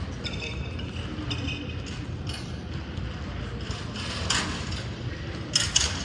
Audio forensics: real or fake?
real